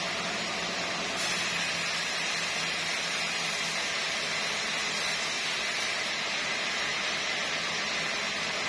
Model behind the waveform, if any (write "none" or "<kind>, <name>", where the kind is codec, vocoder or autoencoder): none